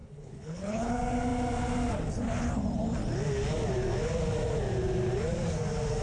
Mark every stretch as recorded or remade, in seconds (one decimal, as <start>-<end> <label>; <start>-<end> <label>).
0.0-0.9 remade; 0.9-6.0 recorded